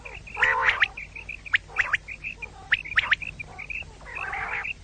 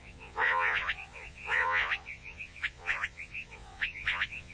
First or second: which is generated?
second